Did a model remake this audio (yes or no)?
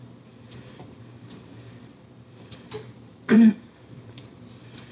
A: yes